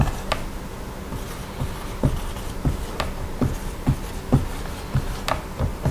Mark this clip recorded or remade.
recorded